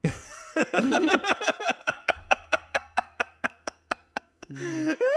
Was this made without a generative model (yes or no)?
no